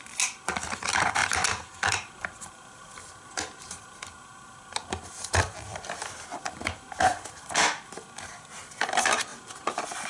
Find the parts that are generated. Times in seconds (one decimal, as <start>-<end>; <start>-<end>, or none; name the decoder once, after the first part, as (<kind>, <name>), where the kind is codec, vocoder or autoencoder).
none